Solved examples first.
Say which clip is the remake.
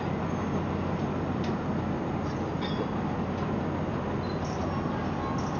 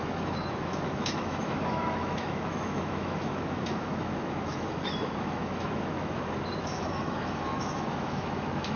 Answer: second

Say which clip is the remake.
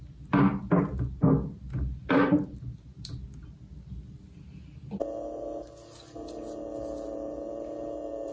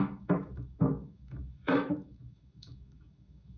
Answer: second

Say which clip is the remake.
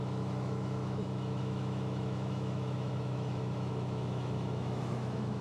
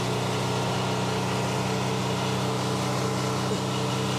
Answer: first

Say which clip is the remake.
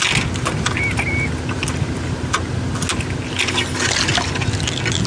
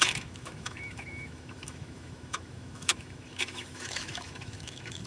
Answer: second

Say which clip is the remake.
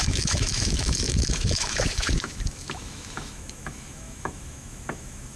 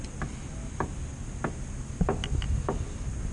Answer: first